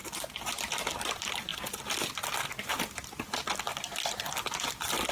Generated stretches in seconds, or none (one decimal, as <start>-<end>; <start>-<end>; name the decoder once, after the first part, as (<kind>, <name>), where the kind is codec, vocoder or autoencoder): none